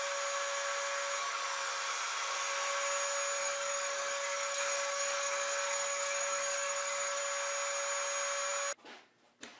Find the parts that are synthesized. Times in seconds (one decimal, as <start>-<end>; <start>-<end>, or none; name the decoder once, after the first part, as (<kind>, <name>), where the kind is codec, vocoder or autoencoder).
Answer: 1.2-1.7 (codec, DAC); 3.4-7.2